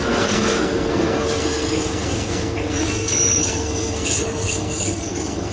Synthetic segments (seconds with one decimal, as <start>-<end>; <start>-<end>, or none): 0.0-5.5